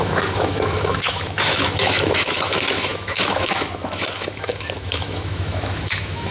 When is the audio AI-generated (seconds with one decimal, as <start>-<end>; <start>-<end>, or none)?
0.0-6.3